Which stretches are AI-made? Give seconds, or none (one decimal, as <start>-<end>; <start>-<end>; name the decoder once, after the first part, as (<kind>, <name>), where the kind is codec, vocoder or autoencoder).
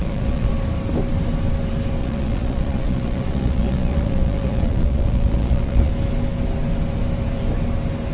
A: 0.0-0.5 (vocoder, Vocos); 2.0-5.9